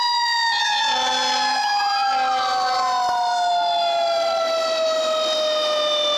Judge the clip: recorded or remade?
recorded